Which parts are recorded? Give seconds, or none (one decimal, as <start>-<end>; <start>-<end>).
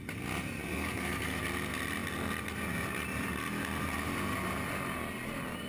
0.0-0.7; 1.4-5.7